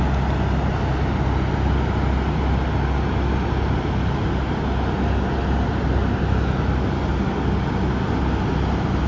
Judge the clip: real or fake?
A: real